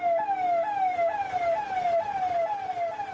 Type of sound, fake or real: real